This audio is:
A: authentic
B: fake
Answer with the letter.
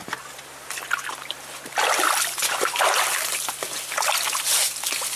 A